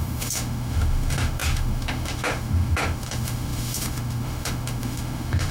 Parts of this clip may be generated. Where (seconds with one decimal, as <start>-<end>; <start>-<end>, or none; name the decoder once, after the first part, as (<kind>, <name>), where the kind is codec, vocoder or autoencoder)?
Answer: 0.0-5.5 (autoencoder, DAC-VAE)